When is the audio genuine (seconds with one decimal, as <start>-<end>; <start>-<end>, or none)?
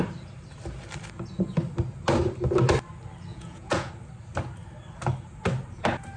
0.0-3.3; 3.9-6.2